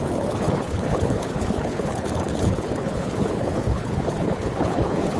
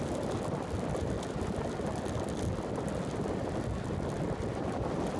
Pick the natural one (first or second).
second